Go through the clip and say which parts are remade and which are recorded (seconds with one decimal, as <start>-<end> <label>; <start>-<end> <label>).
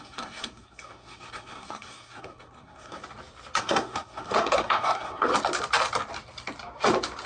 0.0-3.0 remade; 3.0-3.6 recorded; 3.6-5.3 remade; 5.3-7.3 recorded